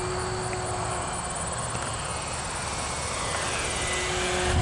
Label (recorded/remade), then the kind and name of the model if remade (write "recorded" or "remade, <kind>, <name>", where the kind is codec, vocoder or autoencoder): recorded